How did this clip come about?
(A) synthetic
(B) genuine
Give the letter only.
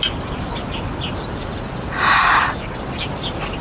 B